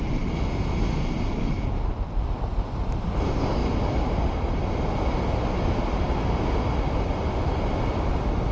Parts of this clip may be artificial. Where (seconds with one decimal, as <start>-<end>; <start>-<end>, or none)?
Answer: none